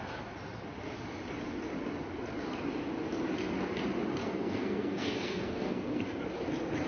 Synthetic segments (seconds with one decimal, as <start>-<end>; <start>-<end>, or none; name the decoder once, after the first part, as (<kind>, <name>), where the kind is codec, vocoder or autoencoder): 4.2-6.2 (codec, SNAC)